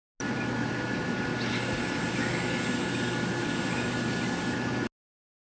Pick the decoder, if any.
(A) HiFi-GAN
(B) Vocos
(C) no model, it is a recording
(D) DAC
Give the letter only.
C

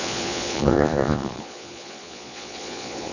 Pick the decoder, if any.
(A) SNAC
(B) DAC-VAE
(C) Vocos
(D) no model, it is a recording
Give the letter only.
C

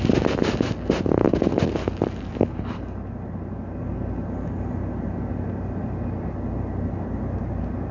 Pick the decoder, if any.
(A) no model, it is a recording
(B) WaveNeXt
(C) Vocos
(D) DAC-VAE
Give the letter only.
A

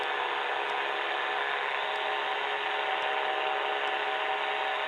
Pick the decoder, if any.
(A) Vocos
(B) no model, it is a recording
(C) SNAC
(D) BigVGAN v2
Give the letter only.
B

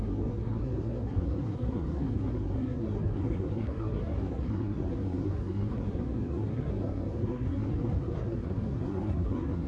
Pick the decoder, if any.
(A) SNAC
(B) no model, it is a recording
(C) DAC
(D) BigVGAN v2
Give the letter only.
A